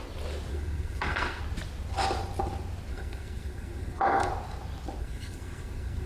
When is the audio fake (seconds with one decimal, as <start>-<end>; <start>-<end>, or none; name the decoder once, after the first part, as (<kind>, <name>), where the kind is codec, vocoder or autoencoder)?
0.5-1.4 (codec, SNAC); 2.9-4.3; 5.0-6.1